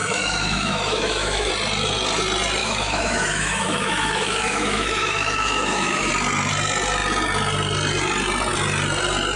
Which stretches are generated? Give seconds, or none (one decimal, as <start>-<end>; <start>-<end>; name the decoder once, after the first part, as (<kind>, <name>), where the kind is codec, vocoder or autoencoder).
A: 0.0-1.5 (autoencoder, DAC-VAE); 2.6-6.1